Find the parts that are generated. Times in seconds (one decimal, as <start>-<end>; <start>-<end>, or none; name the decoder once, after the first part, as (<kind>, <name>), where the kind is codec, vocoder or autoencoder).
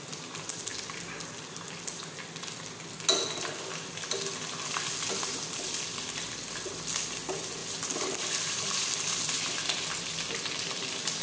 7.6-9.5 (vocoder, BigVGAN v2)